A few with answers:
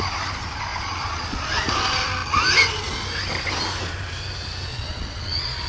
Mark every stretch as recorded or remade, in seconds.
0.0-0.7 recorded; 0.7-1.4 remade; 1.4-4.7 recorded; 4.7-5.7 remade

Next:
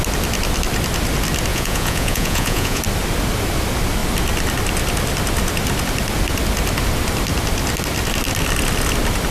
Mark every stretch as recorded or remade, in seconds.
0.0-1.5 recorded; 1.5-2.8 remade; 2.8-9.3 recorded

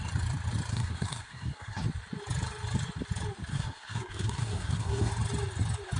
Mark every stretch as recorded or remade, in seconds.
0.0-0.7 recorded; 0.7-1.8 remade; 1.8-3.5 recorded; 3.5-5.1 remade; 5.1-6.0 recorded

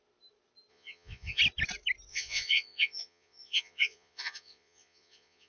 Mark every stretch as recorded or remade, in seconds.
0.0-0.7 recorded; 0.7-1.4 remade; 1.4-2.1 recorded; 2.1-5.5 remade

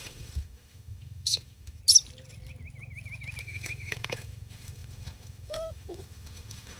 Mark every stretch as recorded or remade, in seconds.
0.0-1.8 remade; 1.8-3.4 recorded; 3.4-6.8 remade

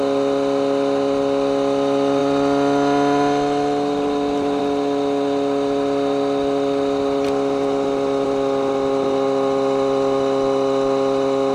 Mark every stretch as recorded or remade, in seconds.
0.0-11.5 recorded

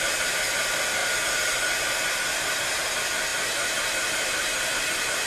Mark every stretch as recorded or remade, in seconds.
0.0-1.0 recorded; 1.0-2.9 remade; 2.9-3.3 recorded; 3.3-5.3 remade